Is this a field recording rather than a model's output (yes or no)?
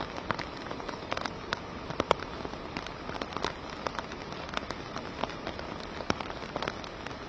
yes